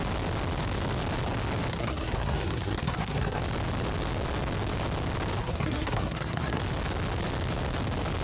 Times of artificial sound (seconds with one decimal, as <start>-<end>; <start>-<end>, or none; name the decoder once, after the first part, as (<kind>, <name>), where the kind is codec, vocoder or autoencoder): 1.7-3.4 (codec, SNAC); 5.4-6.6

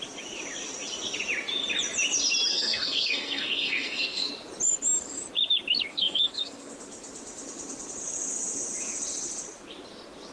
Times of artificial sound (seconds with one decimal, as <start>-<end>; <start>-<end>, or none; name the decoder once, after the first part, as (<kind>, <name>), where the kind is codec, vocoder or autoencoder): 2.5-4.3 (codec, SNAC); 5.9-6.7

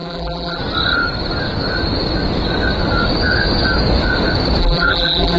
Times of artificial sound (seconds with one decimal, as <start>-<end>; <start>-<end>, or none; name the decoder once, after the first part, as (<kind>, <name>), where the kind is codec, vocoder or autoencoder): 0.0-0.6 (vocoder, BigVGAN v2); 4.6-5.4

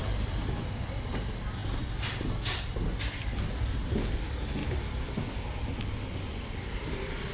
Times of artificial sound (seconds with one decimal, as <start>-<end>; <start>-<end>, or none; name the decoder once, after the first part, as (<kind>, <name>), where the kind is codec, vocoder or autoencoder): none

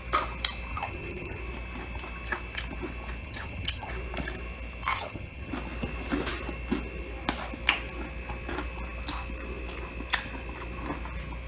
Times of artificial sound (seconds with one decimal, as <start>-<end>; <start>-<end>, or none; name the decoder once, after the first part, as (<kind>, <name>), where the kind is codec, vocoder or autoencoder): 0.7-1.4 (vocoder, HiFi-GAN); 3.2-3.9; 4.9-5.5

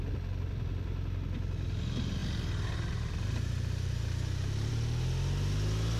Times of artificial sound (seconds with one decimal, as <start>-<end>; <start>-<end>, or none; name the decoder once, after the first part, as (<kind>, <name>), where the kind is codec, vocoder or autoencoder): none

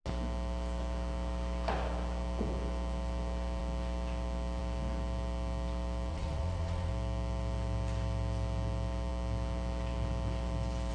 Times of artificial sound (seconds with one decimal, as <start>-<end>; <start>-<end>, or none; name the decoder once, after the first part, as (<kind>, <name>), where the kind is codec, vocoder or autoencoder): 6.1-6.9 (vocoder, Vocos)